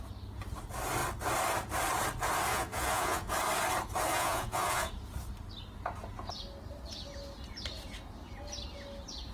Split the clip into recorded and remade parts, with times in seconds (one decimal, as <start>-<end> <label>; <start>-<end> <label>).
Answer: 0.0-2.5 recorded; 2.5-3.3 remade; 3.3-4.1 recorded; 4.1-4.9 remade; 4.9-9.3 recorded